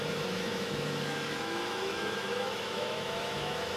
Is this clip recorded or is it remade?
remade